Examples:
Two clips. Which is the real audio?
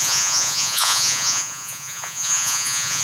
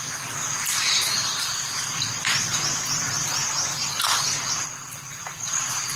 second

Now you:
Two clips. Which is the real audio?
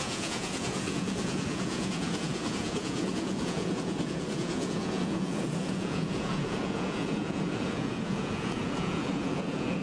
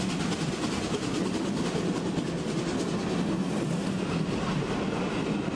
second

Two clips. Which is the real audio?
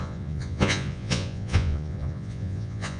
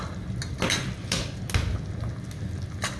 second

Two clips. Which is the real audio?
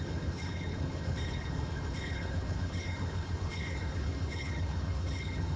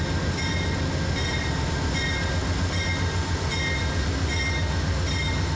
second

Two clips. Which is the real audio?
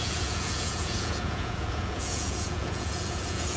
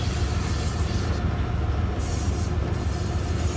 second